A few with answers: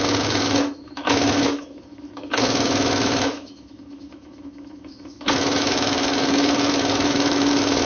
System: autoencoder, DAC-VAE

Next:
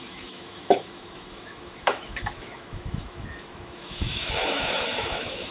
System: autoencoder, DAC-VAE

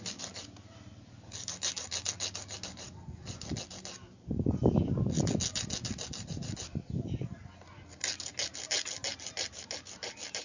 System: none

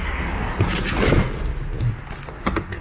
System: none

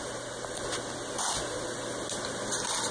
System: none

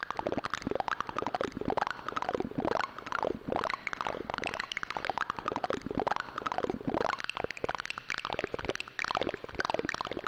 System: none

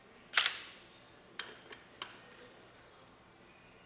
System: none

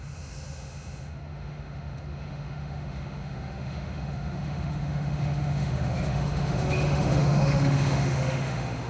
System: autoencoder, DAC-VAE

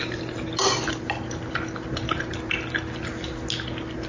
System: none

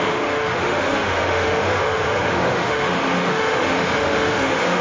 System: autoencoder, DAC-VAE